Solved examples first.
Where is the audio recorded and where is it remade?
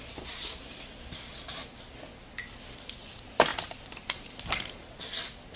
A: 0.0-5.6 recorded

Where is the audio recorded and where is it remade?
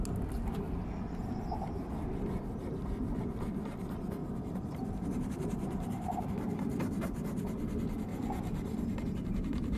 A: 0.0-4.2 recorded; 4.2-6.2 remade; 6.2-8.1 recorded; 8.1-9.0 remade; 9.0-9.8 recorded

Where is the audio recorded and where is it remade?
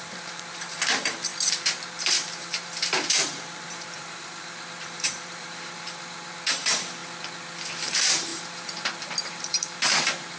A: 0.0-7.0 remade; 7.0-7.8 recorded; 7.8-10.4 remade